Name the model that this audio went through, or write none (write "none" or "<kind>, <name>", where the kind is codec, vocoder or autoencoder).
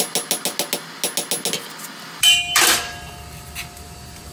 none